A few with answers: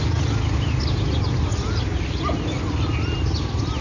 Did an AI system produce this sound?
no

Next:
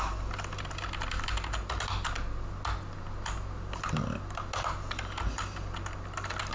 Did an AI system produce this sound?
no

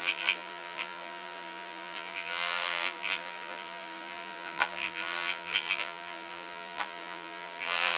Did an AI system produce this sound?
yes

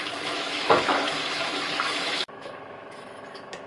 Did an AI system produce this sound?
yes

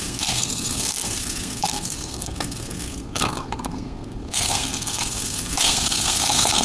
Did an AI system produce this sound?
yes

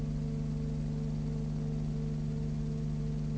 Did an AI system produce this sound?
no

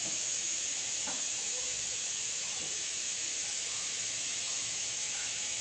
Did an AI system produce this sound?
yes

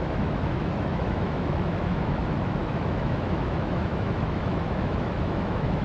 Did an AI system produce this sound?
yes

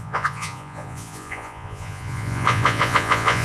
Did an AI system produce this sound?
yes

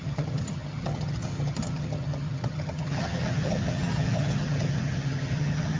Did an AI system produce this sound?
yes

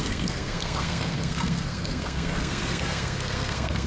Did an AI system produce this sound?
yes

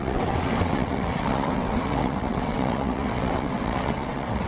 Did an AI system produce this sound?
yes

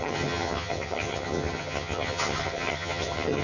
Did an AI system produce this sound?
yes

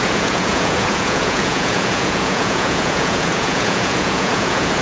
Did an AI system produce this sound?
yes